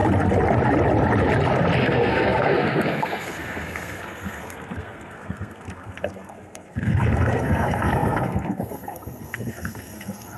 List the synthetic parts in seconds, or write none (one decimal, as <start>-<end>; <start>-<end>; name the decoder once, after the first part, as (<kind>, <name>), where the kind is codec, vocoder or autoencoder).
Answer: 1.8-10.4 (codec, SNAC)